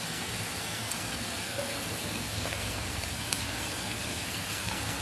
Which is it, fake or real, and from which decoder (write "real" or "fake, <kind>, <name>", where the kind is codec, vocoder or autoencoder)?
fake, codec, SNAC